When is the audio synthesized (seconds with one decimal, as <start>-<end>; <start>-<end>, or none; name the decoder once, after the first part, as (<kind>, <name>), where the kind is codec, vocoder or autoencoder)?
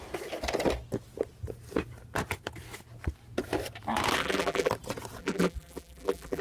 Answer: 4.2-4.7 (vocoder, BigVGAN v2); 5.2-6.4